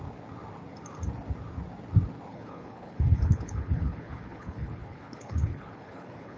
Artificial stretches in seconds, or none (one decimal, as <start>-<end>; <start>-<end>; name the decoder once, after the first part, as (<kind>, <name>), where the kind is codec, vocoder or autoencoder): 2.3-6.4 (codec, HILCodec)